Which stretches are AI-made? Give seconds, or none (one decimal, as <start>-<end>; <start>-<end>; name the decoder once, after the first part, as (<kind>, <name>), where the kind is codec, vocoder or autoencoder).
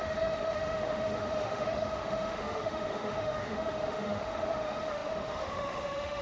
0.0-6.2 (autoencoder, DAC-VAE)